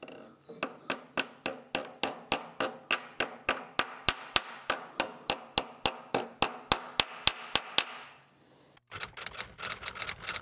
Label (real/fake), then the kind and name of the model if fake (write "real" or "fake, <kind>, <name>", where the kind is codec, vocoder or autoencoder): real